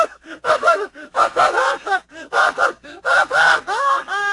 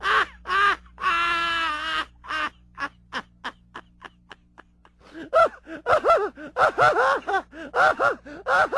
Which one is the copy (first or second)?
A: first